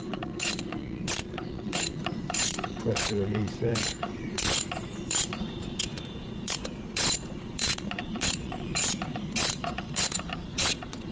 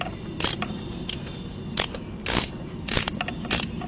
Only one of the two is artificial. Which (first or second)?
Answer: first